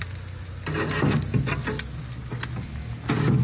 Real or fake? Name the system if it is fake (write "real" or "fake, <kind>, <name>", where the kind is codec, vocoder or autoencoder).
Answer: real